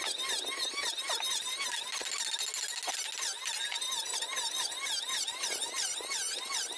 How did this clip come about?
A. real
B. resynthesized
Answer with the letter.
A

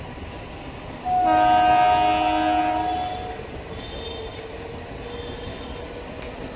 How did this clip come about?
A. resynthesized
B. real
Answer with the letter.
B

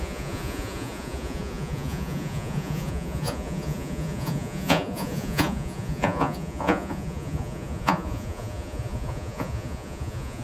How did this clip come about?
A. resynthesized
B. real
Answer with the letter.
A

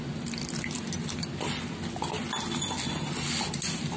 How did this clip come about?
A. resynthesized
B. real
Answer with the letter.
B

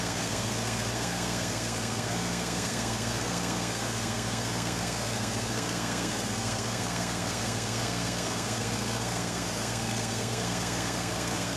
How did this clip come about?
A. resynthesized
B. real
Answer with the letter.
A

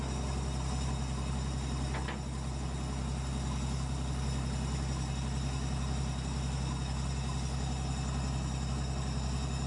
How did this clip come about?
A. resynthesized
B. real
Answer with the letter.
B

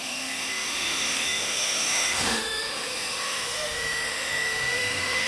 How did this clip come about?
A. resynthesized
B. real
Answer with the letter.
A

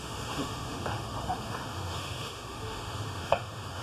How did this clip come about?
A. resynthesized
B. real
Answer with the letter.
A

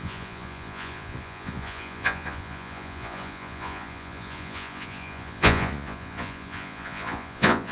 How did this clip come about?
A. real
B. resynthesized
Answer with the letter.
B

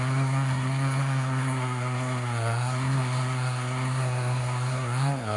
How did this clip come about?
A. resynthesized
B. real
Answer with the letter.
A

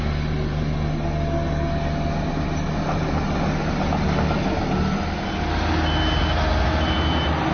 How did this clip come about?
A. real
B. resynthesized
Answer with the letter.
A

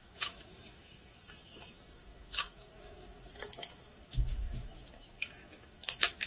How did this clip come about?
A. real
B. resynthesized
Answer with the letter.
B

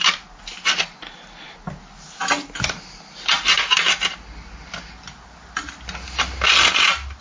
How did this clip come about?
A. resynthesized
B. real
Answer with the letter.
B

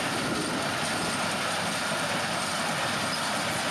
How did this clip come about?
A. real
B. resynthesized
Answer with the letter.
B